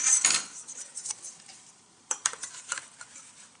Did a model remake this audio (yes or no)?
yes